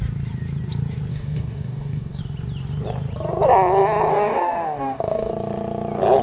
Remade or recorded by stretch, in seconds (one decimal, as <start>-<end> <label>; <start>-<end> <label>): 0.0-1.1 recorded; 1.1-2.2 remade; 2.2-4.1 recorded; 4.1-5.3 remade; 5.3-6.2 recorded